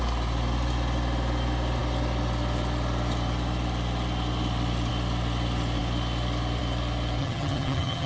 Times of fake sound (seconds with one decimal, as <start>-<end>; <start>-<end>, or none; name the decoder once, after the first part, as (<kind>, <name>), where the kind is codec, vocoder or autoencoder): 7.2-8.1 (vocoder, HiFi-GAN)